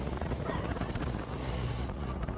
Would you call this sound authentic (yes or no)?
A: no